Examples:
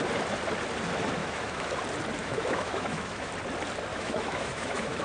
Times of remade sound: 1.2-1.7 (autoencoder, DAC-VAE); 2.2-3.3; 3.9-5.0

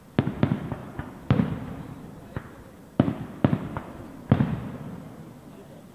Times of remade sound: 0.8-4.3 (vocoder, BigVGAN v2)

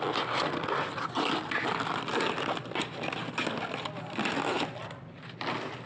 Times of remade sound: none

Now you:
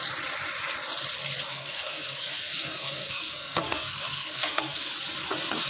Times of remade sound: 1.5-4.9 (codec, SNAC)

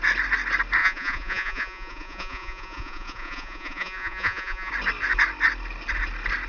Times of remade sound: 0.8-4.7 (vocoder, Vocos)